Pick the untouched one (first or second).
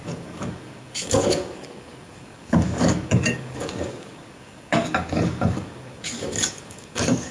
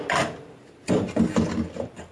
second